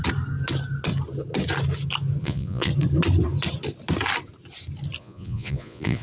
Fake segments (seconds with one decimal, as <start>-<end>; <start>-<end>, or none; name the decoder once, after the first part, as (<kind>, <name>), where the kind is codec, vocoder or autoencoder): 2.2-2.7 (vocoder, Vocos); 5.0-6.0